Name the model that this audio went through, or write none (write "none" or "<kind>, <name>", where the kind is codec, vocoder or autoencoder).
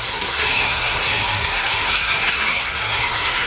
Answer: codec, SNAC